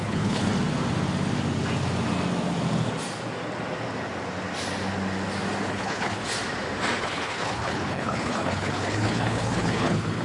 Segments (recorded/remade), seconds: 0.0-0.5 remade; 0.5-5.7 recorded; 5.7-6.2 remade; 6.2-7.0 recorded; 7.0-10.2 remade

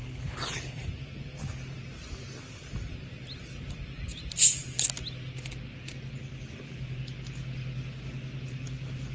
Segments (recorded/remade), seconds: 0.0-0.9 remade; 0.9-9.1 recorded

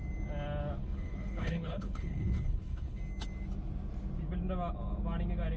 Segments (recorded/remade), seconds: 0.0-0.8 recorded; 0.8-3.0 remade; 3.0-5.6 recorded

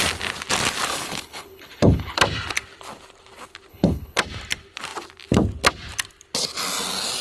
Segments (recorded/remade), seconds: 0.0-0.9 recorded; 0.9-2.2 remade; 2.2-3.7 recorded; 3.7-4.2 remade; 4.2-7.2 recorded

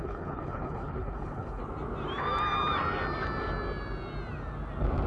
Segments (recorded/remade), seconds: 0.0-1.6 remade; 1.6-5.1 recorded